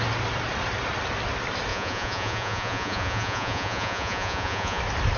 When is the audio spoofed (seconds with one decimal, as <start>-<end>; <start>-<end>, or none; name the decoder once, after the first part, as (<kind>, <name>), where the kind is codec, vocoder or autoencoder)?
1.7-4.8 (vocoder, Vocos)